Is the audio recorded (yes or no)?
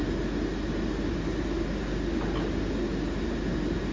yes